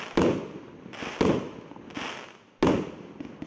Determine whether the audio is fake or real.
real